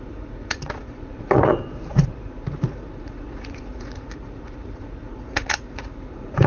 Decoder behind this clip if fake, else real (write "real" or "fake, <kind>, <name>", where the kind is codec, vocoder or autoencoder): fake, vocoder, Vocos